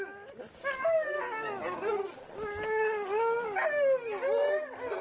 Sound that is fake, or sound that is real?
real